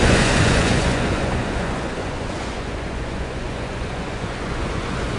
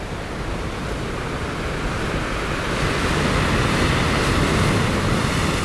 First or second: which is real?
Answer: second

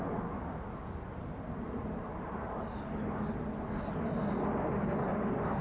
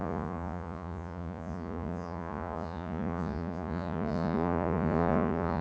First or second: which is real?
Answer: first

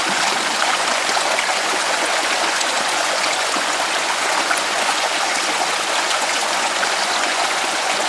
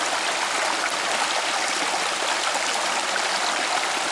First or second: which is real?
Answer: second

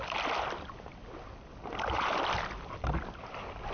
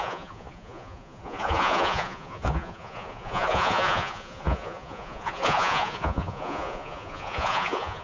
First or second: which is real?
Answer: first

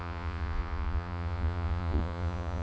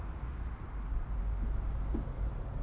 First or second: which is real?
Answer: second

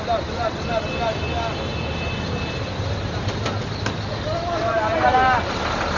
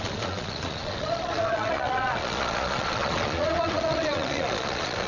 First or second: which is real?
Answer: first